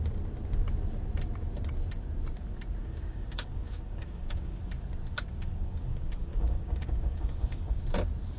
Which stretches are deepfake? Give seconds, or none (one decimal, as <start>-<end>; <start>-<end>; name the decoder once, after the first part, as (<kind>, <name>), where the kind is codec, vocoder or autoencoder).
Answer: 2.8-4.6 (codec, DAC); 5.3-7.8